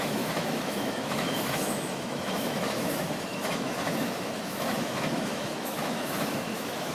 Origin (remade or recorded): remade